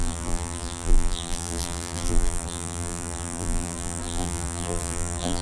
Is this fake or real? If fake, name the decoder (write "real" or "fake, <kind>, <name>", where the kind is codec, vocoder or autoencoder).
fake, vocoder, BigVGAN v2